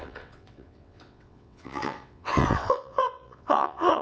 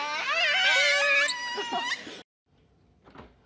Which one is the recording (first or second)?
second